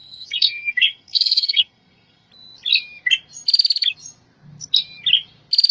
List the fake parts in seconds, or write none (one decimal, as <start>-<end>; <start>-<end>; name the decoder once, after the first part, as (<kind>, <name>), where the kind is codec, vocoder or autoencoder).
0.0-2.3 (codec, SNAC)